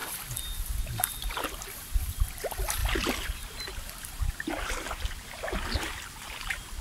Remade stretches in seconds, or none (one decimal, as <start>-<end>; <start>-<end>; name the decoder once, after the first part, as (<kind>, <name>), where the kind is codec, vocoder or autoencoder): none